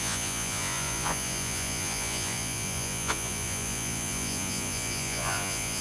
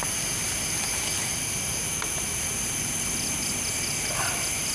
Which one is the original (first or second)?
second